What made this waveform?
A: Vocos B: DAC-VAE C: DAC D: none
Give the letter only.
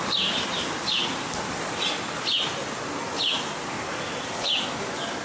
D